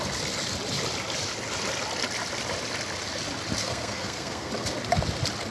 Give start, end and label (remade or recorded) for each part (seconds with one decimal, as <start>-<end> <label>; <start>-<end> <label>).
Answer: 0.0-3.6 recorded; 3.6-4.5 remade; 4.5-5.5 recorded